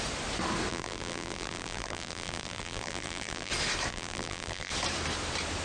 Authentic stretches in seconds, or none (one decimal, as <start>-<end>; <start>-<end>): 0.0-0.7; 3.5-3.9; 4.7-5.6